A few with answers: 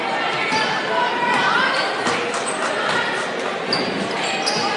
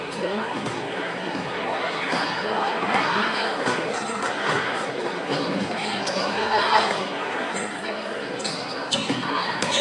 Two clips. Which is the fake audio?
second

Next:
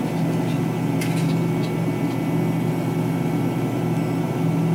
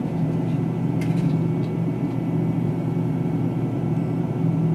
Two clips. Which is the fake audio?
second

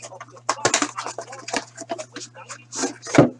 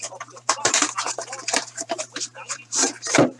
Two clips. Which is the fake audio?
second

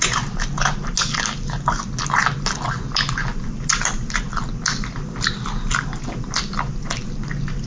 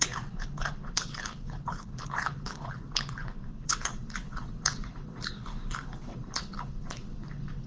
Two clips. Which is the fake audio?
second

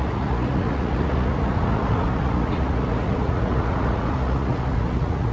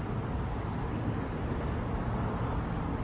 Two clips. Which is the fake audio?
first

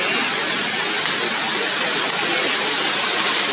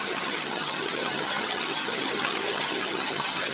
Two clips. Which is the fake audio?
second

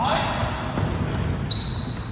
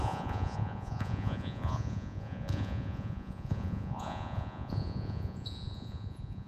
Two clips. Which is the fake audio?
second